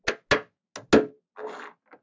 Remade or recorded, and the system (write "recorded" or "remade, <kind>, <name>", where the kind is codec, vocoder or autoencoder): recorded